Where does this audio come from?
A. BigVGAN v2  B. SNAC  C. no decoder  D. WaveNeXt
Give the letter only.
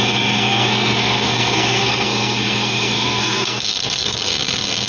B